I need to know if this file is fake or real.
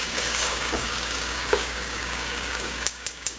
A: fake